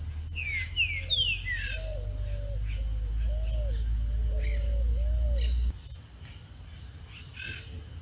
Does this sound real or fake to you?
real